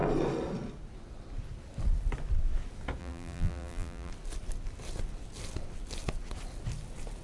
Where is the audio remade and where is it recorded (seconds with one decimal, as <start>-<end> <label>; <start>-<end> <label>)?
0.0-3.0 recorded; 3.0-4.1 remade; 4.1-7.2 recorded